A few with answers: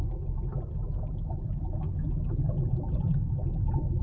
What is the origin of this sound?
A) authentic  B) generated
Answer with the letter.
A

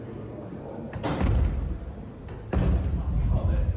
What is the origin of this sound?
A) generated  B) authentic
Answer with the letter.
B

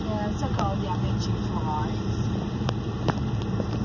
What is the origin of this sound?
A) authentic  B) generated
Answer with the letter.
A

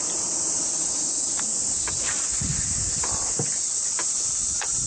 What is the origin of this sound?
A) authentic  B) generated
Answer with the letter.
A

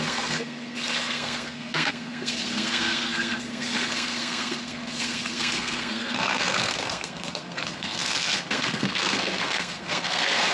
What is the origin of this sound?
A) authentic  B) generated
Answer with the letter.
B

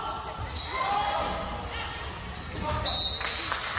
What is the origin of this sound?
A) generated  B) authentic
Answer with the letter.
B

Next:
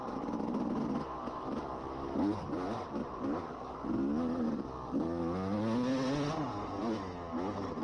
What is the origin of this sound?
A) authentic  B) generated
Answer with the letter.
A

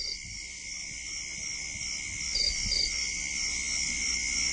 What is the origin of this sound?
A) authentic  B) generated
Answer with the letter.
A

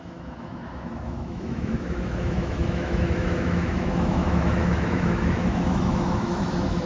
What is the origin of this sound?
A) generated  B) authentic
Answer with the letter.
A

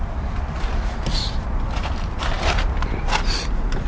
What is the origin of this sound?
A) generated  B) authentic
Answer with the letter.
B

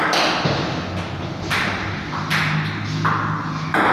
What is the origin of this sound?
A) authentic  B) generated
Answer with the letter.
A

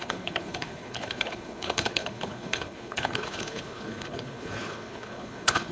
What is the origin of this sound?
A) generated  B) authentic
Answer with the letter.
A